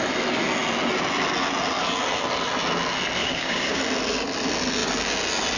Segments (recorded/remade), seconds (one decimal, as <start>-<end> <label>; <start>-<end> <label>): 0.0-3.2 recorded; 3.2-3.8 remade; 3.8-5.6 recorded